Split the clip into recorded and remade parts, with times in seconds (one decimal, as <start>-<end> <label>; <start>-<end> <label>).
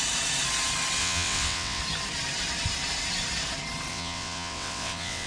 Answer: 0.0-1.0 recorded; 1.0-1.8 remade; 1.8-3.9 recorded; 3.9-5.3 remade